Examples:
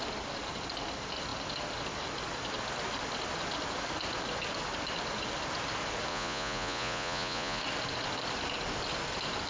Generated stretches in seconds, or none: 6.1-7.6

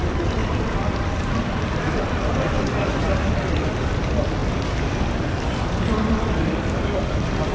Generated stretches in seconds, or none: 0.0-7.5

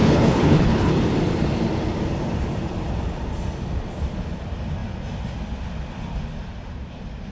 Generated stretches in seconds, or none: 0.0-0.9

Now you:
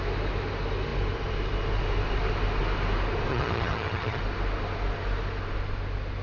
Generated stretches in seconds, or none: 3.3-4.2

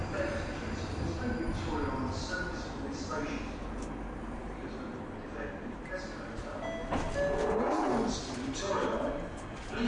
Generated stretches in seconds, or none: none